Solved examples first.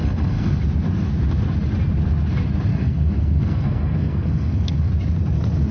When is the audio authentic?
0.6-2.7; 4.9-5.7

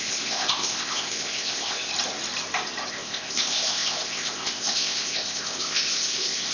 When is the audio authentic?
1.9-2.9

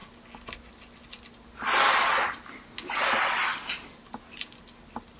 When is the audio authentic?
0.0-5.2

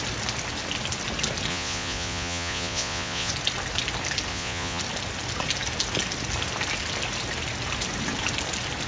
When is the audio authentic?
0.0-1.5; 3.3-4.3; 4.8-8.9

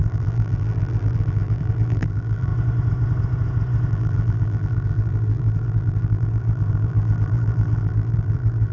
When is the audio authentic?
2.5-3.9